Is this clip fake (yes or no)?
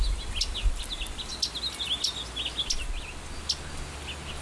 no